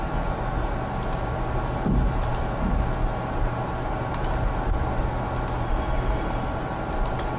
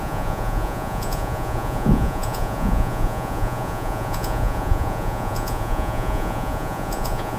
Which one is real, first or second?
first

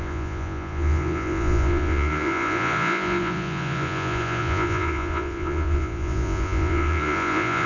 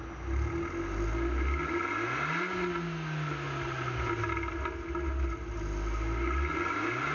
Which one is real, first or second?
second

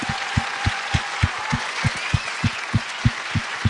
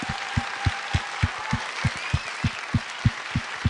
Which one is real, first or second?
second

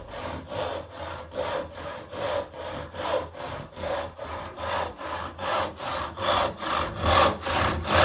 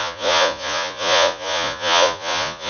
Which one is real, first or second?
first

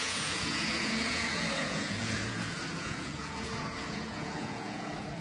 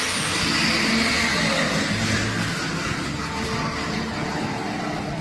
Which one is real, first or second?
second